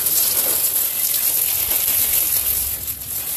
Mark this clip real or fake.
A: real